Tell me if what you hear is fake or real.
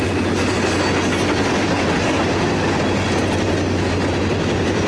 real